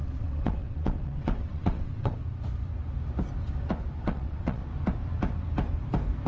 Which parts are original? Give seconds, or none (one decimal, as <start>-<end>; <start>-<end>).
2.2-4.0; 4.6-6.3